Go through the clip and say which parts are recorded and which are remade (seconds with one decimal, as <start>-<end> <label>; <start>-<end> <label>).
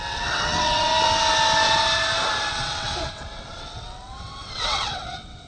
0.0-0.9 remade; 0.9-2.5 recorded; 2.5-5.5 remade